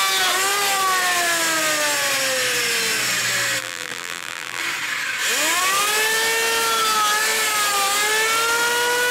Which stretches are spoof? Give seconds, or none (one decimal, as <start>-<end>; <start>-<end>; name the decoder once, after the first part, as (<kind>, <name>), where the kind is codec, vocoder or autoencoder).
3.6-4.6 (vocoder, BigVGAN v2)